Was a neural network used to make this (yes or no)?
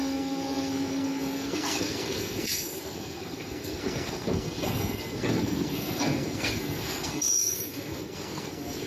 yes